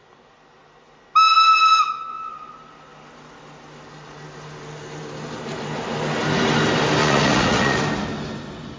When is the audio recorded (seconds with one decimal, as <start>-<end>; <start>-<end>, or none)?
0.0-7.0; 7.8-8.8